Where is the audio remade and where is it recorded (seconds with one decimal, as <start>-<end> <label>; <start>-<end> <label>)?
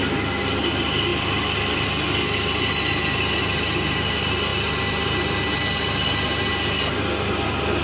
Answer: 0.0-7.8 recorded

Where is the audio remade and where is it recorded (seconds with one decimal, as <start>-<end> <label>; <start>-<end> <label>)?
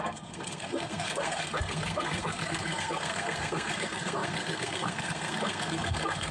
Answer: 0.0-6.3 remade